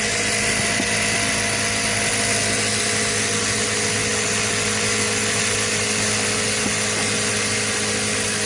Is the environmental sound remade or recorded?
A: recorded